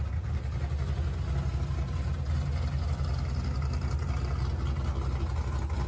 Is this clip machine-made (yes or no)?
no